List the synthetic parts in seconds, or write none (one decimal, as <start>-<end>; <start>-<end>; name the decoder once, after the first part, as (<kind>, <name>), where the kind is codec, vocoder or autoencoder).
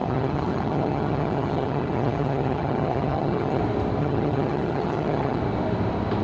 0.0-3.6 (vocoder, HiFi-GAN); 4.0-5.4